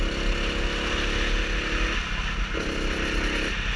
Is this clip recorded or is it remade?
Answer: recorded